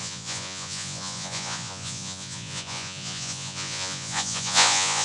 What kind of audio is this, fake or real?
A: fake